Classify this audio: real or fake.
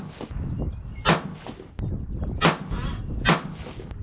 real